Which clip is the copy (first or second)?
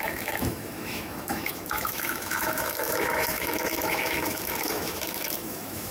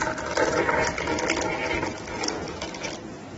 first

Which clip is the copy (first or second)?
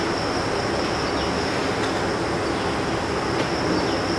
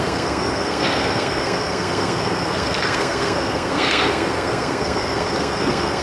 second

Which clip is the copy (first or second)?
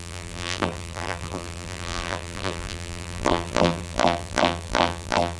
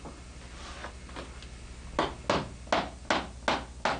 first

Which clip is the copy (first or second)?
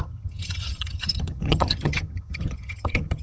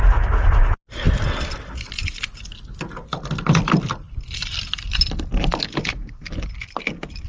first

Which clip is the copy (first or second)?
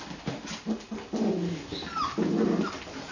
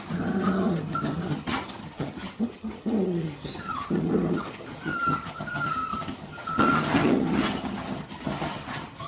second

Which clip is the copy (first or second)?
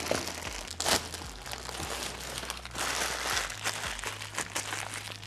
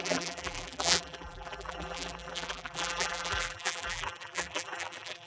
second